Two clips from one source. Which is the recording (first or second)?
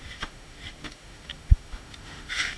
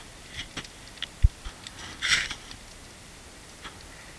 second